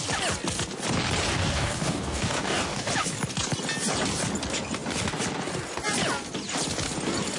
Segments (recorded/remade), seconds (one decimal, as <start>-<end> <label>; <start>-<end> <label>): 0.0-1.3 recorded; 1.3-2.9 remade; 2.9-7.4 recorded

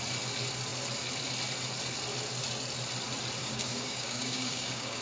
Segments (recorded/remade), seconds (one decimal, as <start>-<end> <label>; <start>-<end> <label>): 0.0-3.4 recorded; 3.4-5.0 remade

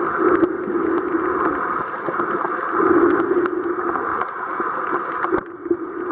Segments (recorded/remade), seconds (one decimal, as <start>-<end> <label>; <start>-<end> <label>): 0.0-4.1 recorded; 4.1-4.6 remade; 4.6-6.1 recorded

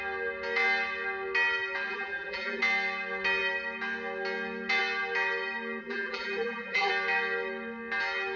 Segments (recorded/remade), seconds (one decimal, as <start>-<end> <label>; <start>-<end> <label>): 0.0-1.9 recorded; 1.9-2.6 remade; 2.6-5.8 recorded; 5.8-6.9 remade; 6.9-8.4 recorded

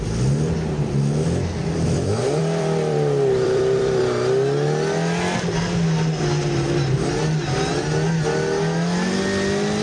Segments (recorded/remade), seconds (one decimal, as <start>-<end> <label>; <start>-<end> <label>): 0.0-1.6 recorded; 1.6-4.0 remade; 4.0-9.8 recorded

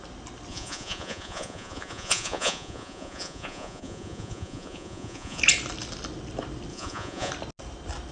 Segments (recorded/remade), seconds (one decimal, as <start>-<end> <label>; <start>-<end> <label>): 0.0-0.5 recorded; 0.5-5.4 remade; 5.4-6.7 recorded; 6.7-7.3 remade; 7.3-8.1 recorded

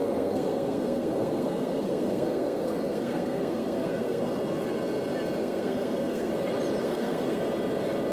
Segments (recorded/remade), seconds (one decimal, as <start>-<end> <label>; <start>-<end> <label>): 0.0-4.3 remade; 4.3-5.4 recorded; 5.4-6.3 remade; 6.3-6.8 recorded; 6.8-7.4 remade; 7.4-8.1 recorded

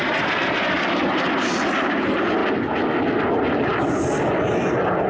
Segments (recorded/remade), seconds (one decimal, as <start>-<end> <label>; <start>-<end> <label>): 0.0-5.1 recorded